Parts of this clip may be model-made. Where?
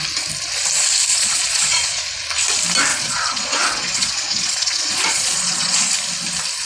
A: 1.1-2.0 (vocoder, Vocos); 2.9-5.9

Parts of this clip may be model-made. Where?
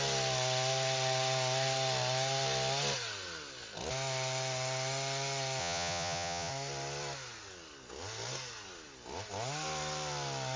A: 5.6-6.5 (vocoder, Vocos)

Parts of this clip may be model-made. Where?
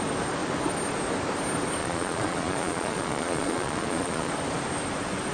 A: 1.8-4.3 (vocoder, Vocos)